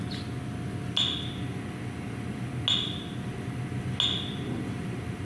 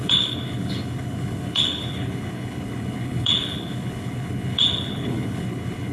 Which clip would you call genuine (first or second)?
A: first